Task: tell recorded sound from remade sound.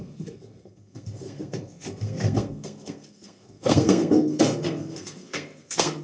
remade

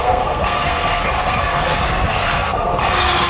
remade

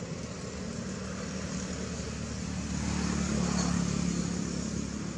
recorded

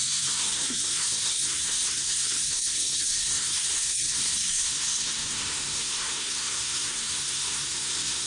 remade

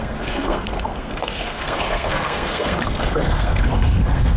remade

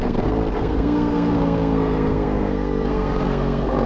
remade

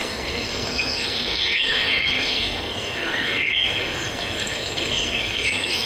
remade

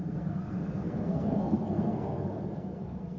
remade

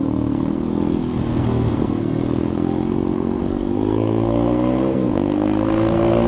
remade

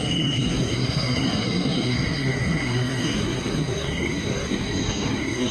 remade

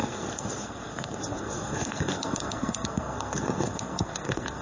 remade